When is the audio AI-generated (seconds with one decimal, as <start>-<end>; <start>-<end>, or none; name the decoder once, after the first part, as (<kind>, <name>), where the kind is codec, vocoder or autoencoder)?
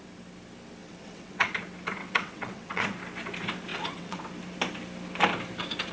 0.8-1.5 (vocoder, WaveNeXt); 2.0-2.8; 3.7-4.2